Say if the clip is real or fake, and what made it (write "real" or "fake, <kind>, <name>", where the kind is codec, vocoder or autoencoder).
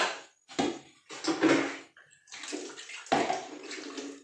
real